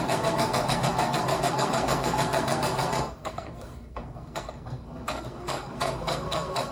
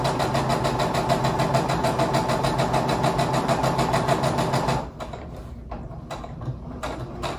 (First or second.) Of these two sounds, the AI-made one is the first